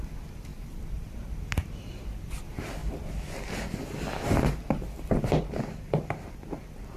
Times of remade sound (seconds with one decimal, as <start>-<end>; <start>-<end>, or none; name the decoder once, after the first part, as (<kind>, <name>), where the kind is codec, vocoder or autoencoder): 0.5-1.1 (vocoder, BigVGAN v2); 2.8-7.0